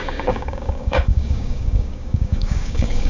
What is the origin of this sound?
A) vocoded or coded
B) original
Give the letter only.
A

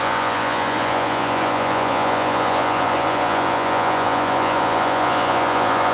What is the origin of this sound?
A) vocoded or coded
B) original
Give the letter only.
A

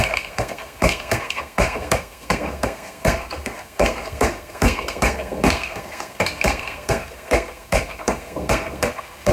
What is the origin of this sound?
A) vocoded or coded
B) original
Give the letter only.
A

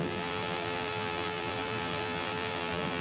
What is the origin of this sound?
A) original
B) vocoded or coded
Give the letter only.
B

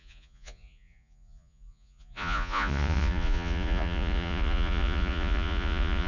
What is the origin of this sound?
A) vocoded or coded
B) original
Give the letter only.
A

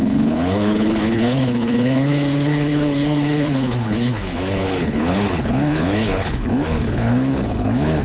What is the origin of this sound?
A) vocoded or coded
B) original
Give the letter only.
A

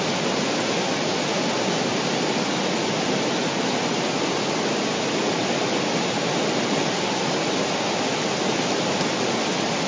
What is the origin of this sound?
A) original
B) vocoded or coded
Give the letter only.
A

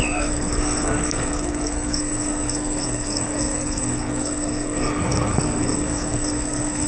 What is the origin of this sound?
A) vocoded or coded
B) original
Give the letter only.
A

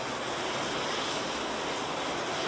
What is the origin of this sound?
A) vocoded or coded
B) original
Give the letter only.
B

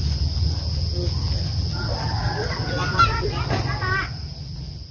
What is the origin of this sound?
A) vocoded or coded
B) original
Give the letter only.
B